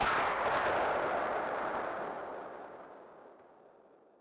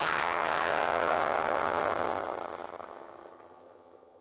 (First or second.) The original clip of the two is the first